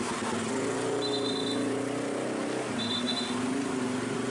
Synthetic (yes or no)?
no